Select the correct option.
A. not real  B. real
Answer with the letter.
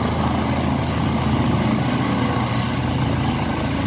B